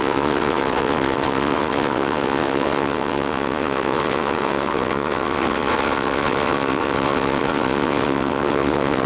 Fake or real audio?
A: fake